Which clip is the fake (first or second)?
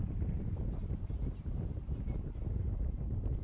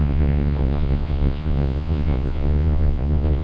second